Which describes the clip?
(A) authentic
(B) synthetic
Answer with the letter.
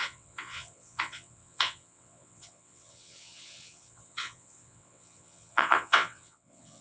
B